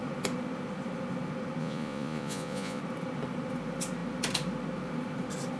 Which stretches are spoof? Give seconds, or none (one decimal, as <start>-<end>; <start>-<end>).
1.6-2.8